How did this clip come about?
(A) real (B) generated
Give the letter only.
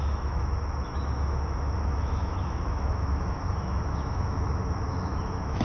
B